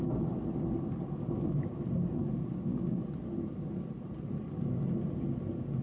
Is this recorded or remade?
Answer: recorded